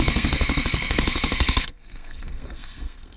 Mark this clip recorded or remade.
remade